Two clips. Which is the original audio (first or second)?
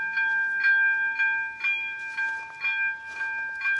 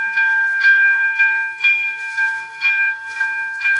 first